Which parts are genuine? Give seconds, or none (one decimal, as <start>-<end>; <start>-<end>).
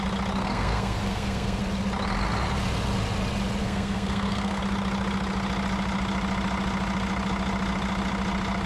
0.0-0.4; 1.6-3.6; 4.6-8.7